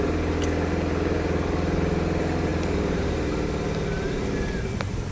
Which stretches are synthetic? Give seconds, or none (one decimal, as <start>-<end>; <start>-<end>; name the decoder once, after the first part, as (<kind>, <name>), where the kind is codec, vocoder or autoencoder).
2.5-3.3 (vocoder, BigVGAN v2)